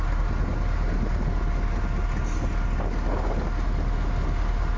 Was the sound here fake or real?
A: real